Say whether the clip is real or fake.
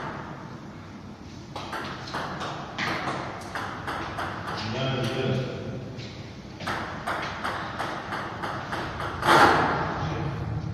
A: real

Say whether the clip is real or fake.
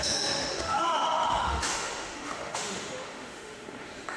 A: fake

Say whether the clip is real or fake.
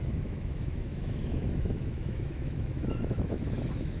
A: fake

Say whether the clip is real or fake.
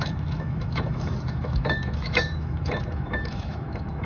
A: fake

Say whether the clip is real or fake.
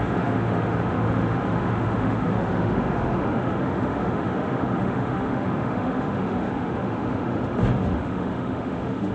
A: fake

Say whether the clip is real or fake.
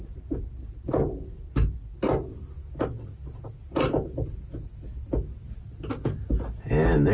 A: real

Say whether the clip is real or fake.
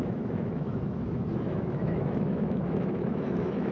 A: fake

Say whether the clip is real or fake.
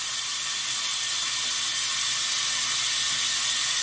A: real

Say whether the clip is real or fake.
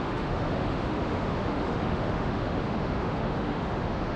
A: fake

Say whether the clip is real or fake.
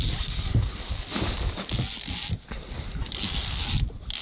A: real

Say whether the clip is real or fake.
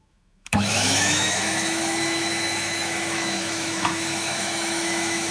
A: fake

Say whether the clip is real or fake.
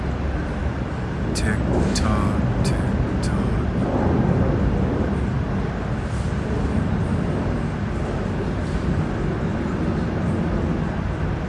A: real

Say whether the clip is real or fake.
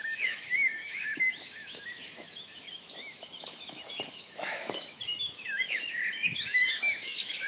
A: fake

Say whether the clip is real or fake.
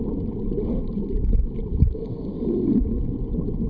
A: real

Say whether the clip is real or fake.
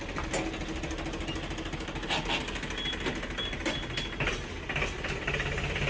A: real